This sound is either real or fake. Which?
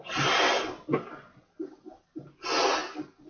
real